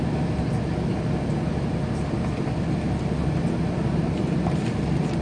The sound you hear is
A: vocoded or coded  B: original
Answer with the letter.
B